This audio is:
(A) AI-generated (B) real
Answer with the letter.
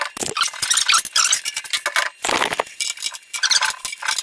B